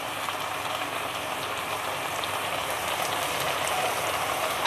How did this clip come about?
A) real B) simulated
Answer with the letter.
A